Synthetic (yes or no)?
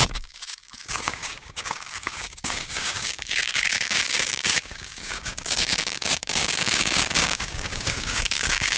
yes